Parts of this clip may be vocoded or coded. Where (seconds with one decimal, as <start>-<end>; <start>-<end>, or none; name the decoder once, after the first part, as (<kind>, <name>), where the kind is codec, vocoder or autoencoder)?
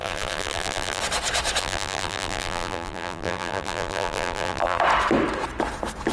0.0-1.0 (vocoder, BigVGAN v2); 1.6-4.8